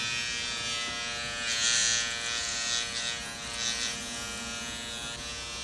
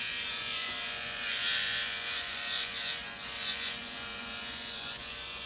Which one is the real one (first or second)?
first